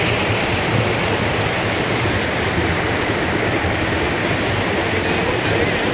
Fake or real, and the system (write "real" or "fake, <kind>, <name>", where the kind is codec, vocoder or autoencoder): real